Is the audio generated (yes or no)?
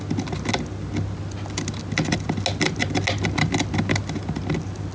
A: no